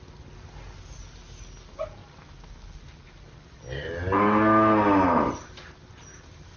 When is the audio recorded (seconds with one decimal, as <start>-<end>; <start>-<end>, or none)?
0.0-6.6